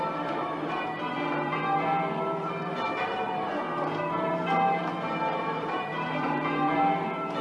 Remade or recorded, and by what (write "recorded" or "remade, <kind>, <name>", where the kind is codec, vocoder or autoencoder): remade, vocoder, BigVGAN v2